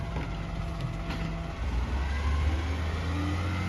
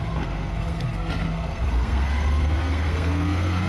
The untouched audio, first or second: first